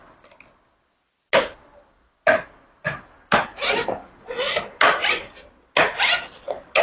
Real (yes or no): yes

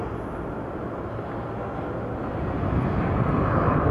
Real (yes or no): yes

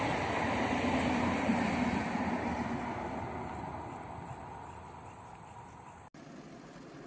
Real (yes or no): yes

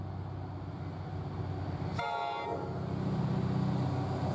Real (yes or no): yes